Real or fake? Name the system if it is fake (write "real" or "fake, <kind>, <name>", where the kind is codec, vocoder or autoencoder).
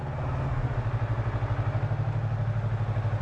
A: real